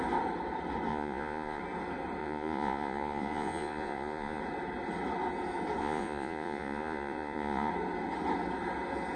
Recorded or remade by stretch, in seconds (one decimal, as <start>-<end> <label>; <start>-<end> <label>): 0.0-0.9 recorded; 0.9-1.6 remade; 1.6-2.2 recorded; 2.2-4.4 remade; 4.4-5.8 recorded; 5.8-7.7 remade; 7.7-9.2 recorded